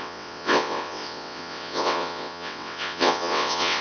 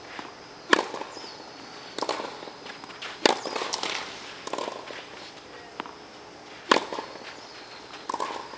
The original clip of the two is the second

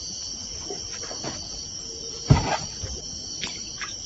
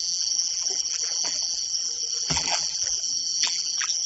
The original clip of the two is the first